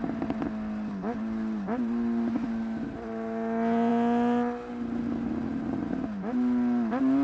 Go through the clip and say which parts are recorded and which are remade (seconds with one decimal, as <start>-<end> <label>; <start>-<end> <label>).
0.0-7.2 recorded